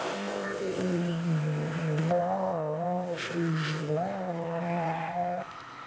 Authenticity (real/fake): fake